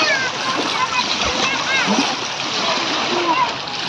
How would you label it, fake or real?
real